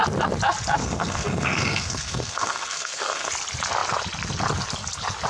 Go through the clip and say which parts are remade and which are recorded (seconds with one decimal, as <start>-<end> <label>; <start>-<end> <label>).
0.0-0.8 recorded; 0.8-3.3 remade; 3.3-5.3 recorded